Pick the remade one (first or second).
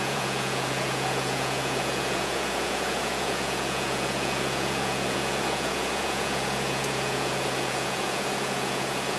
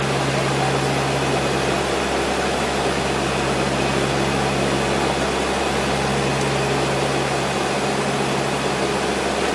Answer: first